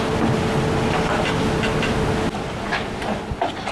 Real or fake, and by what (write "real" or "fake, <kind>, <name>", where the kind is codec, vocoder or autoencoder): real